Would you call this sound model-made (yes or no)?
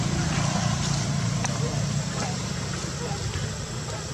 no